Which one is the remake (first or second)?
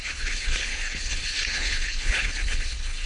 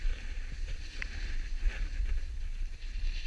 first